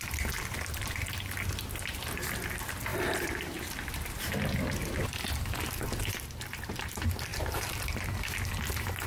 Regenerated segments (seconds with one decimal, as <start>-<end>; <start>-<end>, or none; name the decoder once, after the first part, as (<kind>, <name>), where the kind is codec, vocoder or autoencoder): 7.3-8.3 (vocoder, BigVGAN v2)